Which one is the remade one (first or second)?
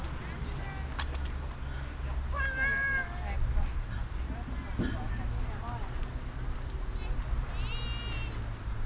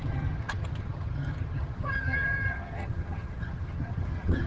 second